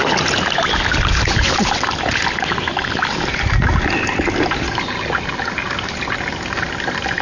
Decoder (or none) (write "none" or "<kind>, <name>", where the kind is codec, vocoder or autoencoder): none